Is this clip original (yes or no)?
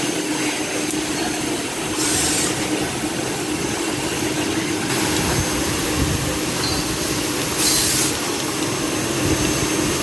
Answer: yes